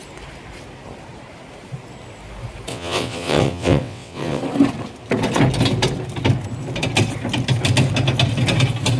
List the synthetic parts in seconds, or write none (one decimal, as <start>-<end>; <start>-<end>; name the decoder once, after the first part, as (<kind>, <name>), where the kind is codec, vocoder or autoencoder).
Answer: 2.7-4.4 (vocoder, WaveNeXt)

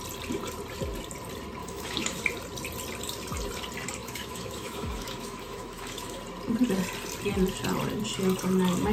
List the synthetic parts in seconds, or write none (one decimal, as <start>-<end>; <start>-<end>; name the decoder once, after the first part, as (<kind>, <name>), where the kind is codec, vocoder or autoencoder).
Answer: 1.6-2.2 (autoencoder, DAC-VAE); 4.0-6.2

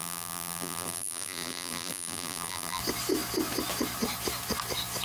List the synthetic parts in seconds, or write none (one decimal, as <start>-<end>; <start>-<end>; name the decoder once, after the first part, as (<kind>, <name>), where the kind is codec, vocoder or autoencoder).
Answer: 0.0-2.8 (vocoder, BigVGAN v2)

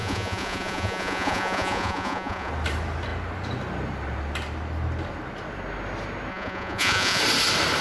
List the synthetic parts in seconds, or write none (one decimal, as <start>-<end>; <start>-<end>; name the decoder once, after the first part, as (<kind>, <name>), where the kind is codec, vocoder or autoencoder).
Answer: 0.0-2.5 (vocoder, Vocos); 6.3-7.2

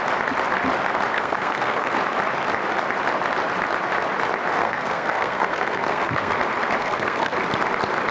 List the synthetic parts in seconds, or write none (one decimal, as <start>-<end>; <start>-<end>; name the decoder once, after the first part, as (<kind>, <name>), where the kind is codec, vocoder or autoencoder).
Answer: 1.1-2.0 (codec, SNAC); 4.6-6.3; 6.8-7.4

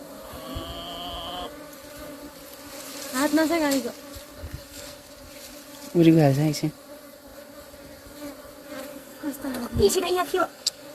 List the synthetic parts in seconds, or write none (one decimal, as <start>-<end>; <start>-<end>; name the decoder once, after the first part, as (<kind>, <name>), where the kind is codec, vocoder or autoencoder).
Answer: 4.4-5.1 (codec, SNAC); 8.9-10.9

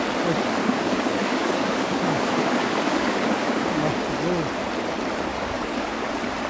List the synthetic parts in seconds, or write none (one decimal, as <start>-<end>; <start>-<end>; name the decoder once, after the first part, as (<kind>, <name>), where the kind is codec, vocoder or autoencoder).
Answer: 0.6-3.9 (codec, DAC); 5.3-6.1

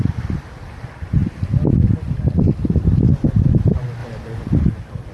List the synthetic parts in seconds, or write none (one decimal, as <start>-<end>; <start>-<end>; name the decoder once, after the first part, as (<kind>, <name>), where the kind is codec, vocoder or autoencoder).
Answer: none